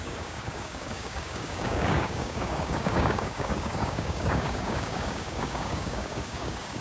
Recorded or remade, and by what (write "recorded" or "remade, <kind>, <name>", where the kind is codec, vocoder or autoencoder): remade, codec, DAC